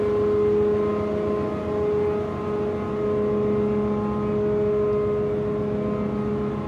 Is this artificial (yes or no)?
no